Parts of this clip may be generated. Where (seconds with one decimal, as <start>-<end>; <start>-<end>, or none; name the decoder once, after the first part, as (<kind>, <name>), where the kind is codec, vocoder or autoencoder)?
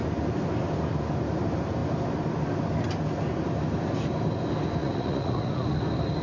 4.8-5.8 (vocoder, Vocos)